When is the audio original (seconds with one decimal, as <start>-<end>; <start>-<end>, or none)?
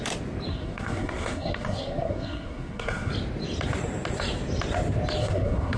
0.0-0.5; 3.1-5.2